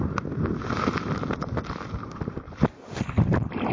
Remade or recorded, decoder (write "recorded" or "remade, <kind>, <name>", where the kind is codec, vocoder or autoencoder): recorded